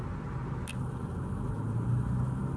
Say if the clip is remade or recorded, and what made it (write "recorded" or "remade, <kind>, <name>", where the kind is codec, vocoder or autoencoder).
recorded